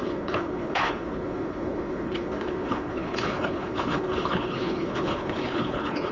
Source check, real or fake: fake